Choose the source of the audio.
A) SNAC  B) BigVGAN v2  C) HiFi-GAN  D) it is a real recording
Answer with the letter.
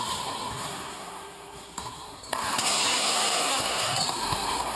A